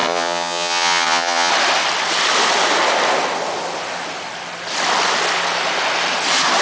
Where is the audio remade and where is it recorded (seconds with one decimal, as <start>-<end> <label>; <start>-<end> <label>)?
0.0-1.5 remade; 1.5-6.6 recorded